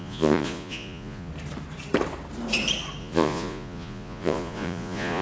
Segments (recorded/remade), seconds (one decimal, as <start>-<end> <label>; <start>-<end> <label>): 0.0-1.3 remade; 1.3-3.0 recorded; 3.0-5.2 remade